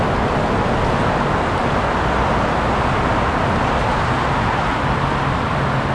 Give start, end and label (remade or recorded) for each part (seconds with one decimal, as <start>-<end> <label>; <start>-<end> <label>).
0.0-5.9 recorded